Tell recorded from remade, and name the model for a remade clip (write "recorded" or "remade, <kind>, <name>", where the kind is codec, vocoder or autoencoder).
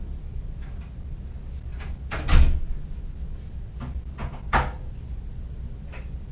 recorded